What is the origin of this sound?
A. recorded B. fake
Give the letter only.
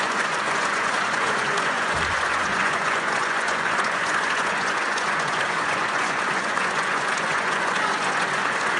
B